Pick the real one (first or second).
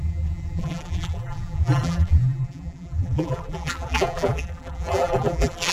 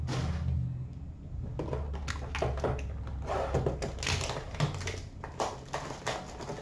second